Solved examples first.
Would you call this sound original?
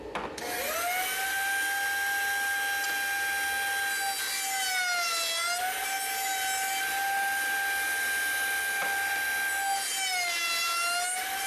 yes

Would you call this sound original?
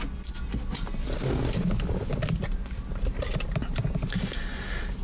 yes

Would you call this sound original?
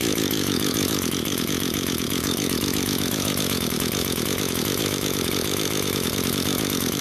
no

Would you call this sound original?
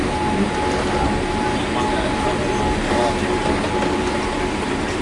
yes